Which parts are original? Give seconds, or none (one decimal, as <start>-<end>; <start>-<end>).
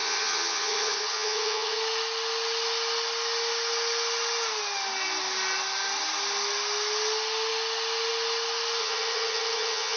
1.8-8.8